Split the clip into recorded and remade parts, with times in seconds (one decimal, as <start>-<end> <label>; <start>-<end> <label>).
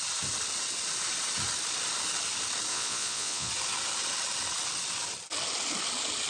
0.0-2.7 recorded; 2.7-3.5 remade; 3.5-6.3 recorded